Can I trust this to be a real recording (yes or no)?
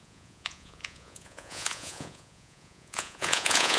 no